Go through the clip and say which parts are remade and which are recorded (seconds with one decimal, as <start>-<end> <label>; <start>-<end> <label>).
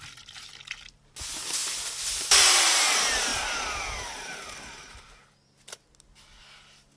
0.0-7.0 recorded